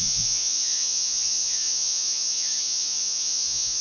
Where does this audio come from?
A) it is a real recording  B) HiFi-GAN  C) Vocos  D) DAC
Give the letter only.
C